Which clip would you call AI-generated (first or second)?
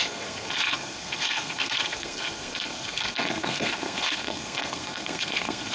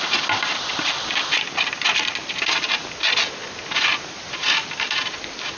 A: first